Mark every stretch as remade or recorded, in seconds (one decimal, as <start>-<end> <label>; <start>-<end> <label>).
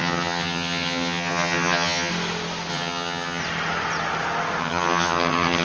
0.0-2.1 remade; 2.1-2.7 recorded; 2.7-3.4 remade; 3.4-4.6 recorded; 4.6-5.6 remade